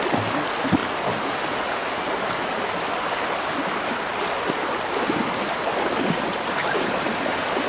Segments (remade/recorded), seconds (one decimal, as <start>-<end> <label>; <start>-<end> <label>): 0.0-7.7 recorded

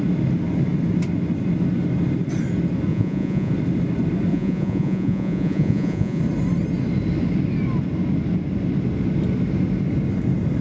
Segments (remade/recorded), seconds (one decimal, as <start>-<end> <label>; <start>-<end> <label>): 0.0-2.9 recorded; 2.9-3.5 remade; 3.5-4.3 recorded; 4.3-6.2 remade; 6.2-10.6 recorded

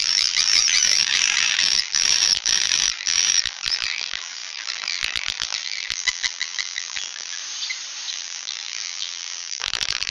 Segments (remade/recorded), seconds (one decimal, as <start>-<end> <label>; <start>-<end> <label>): 0.0-7.4 remade; 7.4-8.1 recorded; 8.1-10.1 remade

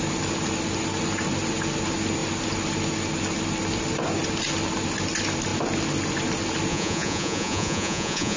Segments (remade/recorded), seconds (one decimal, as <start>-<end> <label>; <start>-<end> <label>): 0.0-6.7 recorded; 6.7-8.4 remade

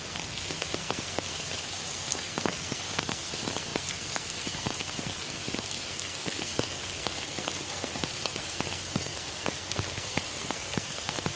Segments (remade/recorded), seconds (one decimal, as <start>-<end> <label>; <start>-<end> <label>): 0.0-11.4 remade